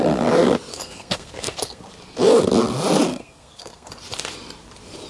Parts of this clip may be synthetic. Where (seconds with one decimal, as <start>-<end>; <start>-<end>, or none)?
0.7-1.8; 3.1-3.9